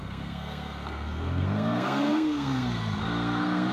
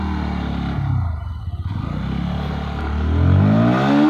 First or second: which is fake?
first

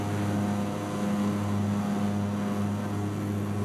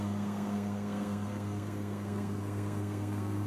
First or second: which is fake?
second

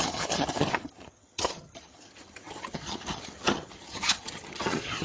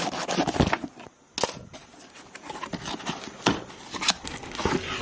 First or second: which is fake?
first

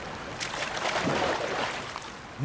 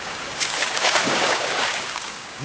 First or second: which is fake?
second